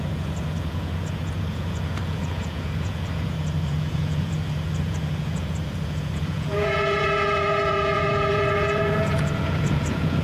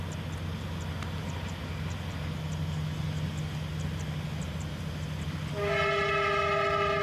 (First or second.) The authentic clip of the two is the second